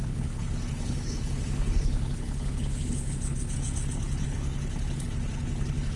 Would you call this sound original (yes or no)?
no